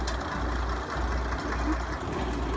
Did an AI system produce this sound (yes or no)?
no